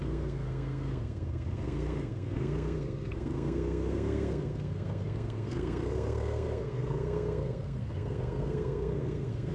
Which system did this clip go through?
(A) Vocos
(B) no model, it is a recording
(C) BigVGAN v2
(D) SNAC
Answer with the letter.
D